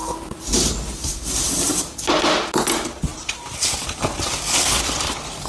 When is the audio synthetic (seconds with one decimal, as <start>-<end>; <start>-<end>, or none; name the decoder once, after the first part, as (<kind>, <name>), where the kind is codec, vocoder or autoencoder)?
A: 0.0-1.6 (vocoder, BigVGAN v2)